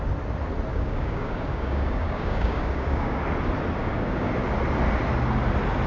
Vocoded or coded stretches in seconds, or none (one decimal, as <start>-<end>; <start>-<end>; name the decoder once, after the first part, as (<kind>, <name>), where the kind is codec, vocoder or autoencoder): 0.7-3.2 (codec, DAC); 3.8-4.3